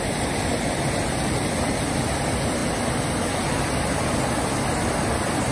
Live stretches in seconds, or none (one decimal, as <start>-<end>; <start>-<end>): 0.0-5.5